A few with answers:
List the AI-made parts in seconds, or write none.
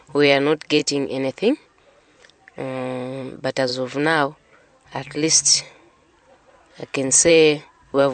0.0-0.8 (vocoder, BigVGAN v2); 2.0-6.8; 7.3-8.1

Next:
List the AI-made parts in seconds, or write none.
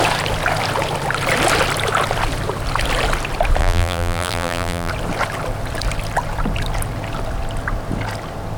3.6-4.9 (vocoder, BigVGAN v2)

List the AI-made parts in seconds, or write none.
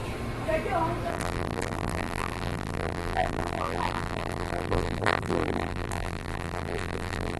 1.1-7.4 (vocoder, BigVGAN v2)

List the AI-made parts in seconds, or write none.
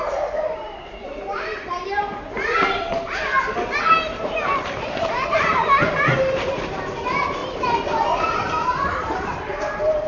0.0-2.9 (vocoder, BigVGAN v2); 3.8-7.4; 8.3-10.1